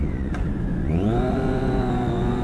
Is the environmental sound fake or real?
fake